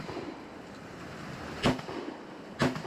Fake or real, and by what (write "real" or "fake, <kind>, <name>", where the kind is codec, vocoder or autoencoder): fake, vocoder, BigVGAN v2